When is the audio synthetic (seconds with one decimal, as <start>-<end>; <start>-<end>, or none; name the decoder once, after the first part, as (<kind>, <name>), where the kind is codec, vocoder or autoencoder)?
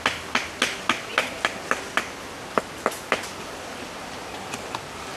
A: none